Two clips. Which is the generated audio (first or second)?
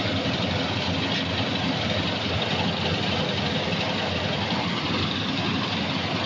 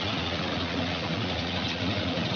second